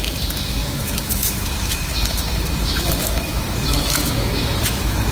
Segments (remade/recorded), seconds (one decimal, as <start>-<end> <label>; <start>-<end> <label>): 0.0-5.1 remade